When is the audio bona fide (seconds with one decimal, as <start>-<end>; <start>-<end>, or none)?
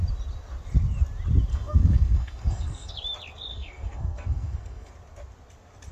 0.0-1.5; 2.9-3.5; 4.9-5.9